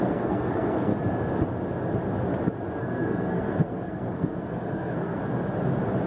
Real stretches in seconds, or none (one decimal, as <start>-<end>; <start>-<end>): 0.9-2.8; 5.2-6.1